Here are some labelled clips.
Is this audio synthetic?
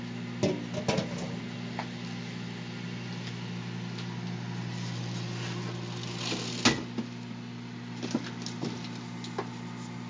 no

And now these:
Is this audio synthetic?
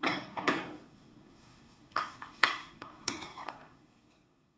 yes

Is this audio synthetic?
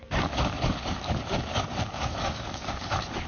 yes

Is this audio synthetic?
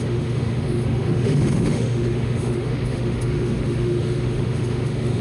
yes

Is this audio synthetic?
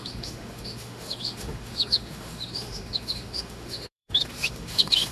yes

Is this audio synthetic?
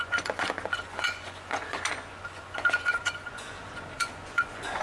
yes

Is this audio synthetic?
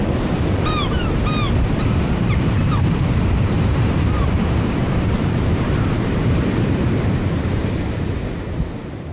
yes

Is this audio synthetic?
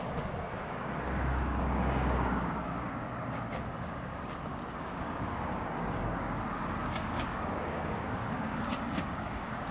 yes